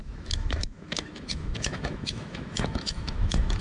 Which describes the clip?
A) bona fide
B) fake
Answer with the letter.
B